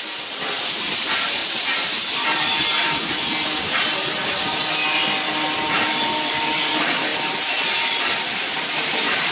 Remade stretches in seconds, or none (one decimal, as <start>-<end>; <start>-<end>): 0.0-1.4; 5.7-9.3

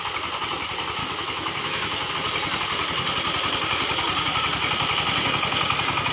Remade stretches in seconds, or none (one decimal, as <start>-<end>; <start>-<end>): 1.0-2.1